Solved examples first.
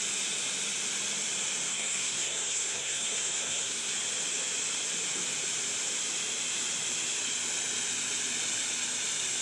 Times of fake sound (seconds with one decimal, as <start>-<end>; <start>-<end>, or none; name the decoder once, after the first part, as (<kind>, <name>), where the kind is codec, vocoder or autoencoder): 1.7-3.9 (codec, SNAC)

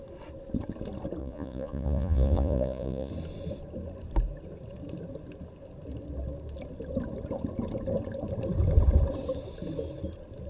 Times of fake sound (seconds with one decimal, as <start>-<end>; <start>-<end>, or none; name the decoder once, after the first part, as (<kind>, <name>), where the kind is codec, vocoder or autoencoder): 1.2-3.1 (vocoder, Vocos)

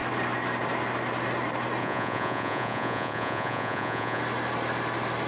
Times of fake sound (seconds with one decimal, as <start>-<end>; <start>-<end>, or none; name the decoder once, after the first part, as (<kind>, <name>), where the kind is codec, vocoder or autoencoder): 1.8-4.2 (vocoder, Vocos)